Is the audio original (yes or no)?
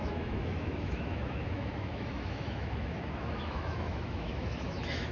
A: no